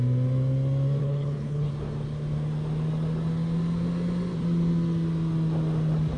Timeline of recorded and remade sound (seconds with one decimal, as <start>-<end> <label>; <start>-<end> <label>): 0.0-1.0 recorded; 1.0-1.7 remade; 1.7-6.2 recorded